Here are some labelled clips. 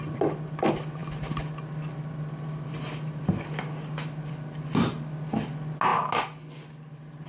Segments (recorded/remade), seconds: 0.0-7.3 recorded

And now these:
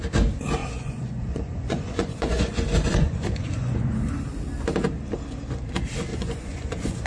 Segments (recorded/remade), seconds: 0.0-0.6 recorded; 0.6-4.0 remade; 4.0-6.1 recorded; 6.1-7.1 remade

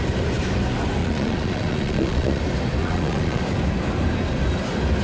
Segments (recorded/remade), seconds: 0.0-1.0 recorded; 1.0-2.4 remade; 2.4-2.8 recorded; 2.8-3.4 remade; 3.4-5.0 recorded

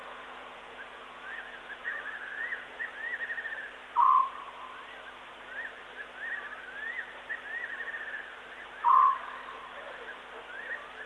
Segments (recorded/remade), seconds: 0.0-2.7 remade; 2.7-11.1 recorded

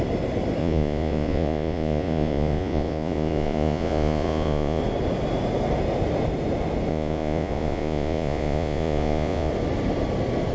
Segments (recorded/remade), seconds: 0.0-0.6 recorded; 0.6-4.8 remade; 4.8-6.9 recorded; 6.9-9.5 remade; 9.5-10.5 recorded

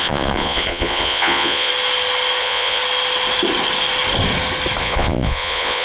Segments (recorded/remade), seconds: 0.0-1.7 remade; 1.7-2.4 recorded; 2.4-2.8 remade; 2.8-4.8 recorded; 4.8-5.8 remade

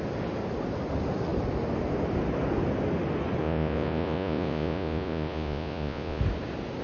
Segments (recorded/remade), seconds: 0.0-3.4 recorded; 3.4-6.2 remade; 6.2-6.8 recorded

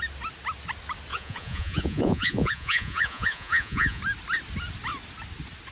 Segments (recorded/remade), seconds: 0.0-1.1 recorded; 1.1-4.0 remade; 4.0-5.7 recorded